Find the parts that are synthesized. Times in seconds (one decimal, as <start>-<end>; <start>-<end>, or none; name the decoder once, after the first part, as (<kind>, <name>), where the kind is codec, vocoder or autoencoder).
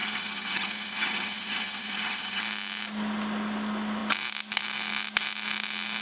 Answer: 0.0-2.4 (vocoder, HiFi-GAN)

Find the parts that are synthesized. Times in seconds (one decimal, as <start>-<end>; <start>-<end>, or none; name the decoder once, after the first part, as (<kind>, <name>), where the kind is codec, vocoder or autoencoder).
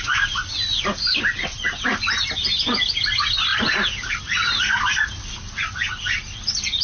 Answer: 0.0-0.5 (vocoder, BigVGAN v2); 1.0-6.8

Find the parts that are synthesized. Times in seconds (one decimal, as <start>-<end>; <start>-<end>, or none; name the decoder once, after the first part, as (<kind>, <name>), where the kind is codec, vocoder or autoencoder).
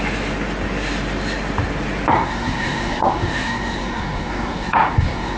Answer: 2.1-5.4 (codec, SNAC)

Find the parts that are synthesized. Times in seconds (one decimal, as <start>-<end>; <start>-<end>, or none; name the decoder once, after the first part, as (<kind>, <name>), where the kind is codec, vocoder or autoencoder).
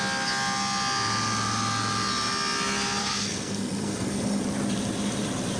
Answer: 3.0-4.4 (codec, SNAC)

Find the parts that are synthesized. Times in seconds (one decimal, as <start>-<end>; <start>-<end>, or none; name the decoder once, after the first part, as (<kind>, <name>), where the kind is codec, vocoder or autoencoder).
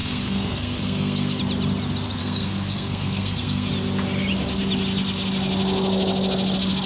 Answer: 0.0-1.4 (codec, SNAC); 2.2-3.7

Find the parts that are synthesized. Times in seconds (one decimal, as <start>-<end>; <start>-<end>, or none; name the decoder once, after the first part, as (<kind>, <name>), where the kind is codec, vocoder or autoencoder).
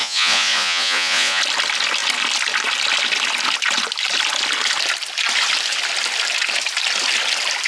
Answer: 0.0-1.4 (vocoder, Vocos)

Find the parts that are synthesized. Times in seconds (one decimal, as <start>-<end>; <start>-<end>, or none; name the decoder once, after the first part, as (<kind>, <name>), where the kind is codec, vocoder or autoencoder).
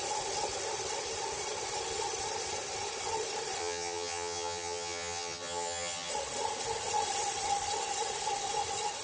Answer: 3.6-6.1 (vocoder, HiFi-GAN)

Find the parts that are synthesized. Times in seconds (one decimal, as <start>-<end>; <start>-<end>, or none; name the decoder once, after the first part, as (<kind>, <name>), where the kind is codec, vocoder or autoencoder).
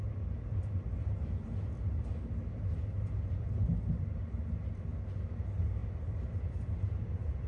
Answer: none